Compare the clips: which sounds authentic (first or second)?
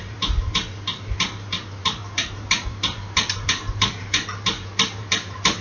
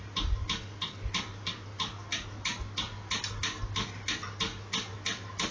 second